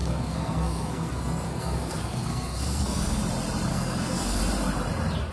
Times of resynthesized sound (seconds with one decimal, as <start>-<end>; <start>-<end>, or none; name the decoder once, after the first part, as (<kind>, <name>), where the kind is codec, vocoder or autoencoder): 0.0-3.2 (codec, SNAC); 3.7-4.4